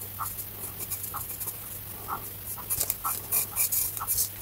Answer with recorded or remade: recorded